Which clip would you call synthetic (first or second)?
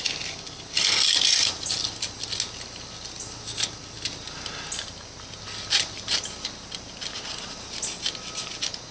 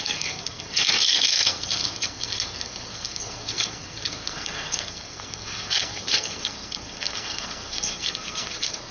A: second